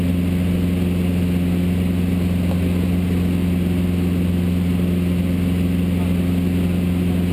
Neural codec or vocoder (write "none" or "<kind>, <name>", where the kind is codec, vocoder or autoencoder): none